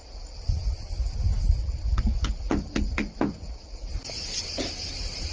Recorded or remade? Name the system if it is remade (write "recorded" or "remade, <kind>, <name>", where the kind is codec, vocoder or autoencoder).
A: recorded